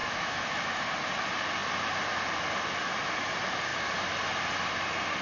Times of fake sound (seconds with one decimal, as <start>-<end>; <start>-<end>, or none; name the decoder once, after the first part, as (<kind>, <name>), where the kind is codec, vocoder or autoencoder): 0.0-0.8 (autoencoder, DAC-VAE)